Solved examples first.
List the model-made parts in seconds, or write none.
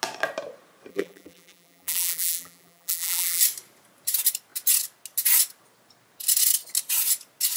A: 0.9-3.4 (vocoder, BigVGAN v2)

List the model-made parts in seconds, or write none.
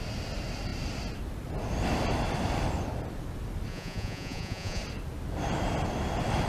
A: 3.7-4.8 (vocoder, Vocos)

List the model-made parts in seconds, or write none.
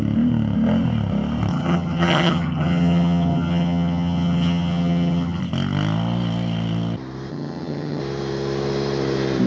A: 1.5-5.4 (vocoder, HiFi-GAN); 7.3-8.0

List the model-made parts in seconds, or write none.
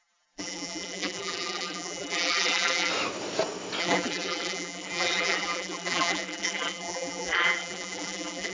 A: 0.0-2.9 (vocoder, BigVGAN v2); 3.8-8.5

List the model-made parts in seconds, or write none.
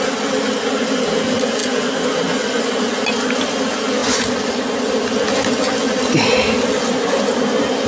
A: none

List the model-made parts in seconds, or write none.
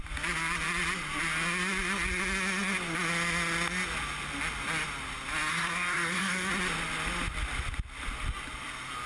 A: 5.5-6.5 (codec, SNAC)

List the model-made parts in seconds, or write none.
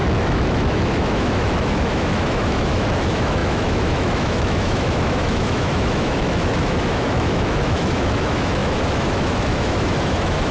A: 0.0-10.5 (autoencoder, DAC-VAE)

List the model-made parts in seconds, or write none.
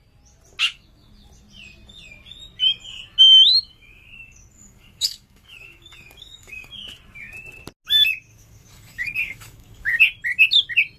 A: 0.6-1.1 (codec, DAC); 3.5-6.7; 8.3-10.0